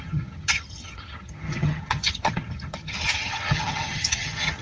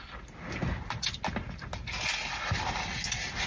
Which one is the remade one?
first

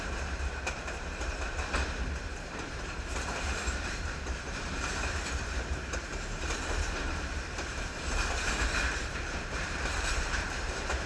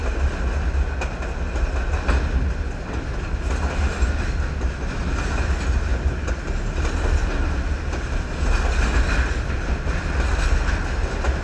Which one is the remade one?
first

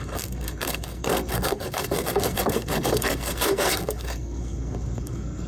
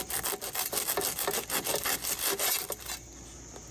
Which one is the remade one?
first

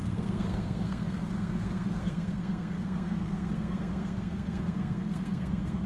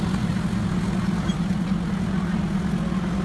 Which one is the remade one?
first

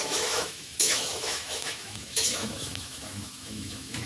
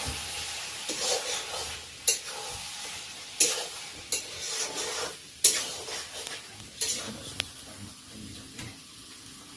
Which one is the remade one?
first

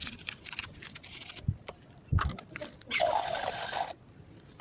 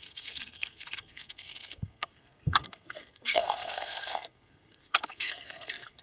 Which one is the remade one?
second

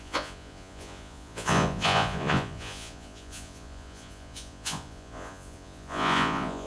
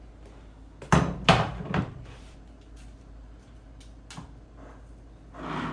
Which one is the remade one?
first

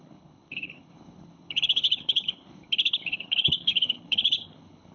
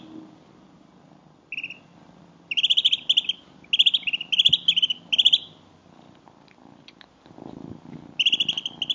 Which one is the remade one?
first